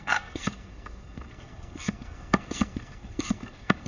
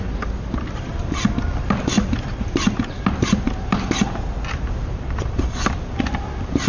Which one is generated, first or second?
first